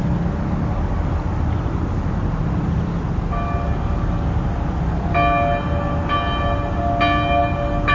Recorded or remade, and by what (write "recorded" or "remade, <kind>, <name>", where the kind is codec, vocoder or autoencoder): recorded